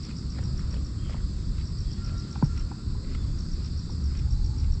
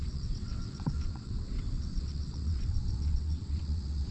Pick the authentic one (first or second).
first